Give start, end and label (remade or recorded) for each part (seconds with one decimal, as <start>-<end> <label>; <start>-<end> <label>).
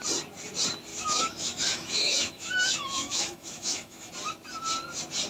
0.0-0.9 recorded; 0.9-4.1 remade; 4.1-5.3 recorded